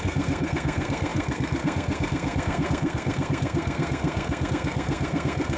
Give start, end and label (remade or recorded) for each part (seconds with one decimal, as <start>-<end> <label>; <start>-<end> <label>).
0.0-5.6 remade